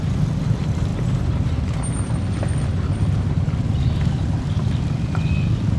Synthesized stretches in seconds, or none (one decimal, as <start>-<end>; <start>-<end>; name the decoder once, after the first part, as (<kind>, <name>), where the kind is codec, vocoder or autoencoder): none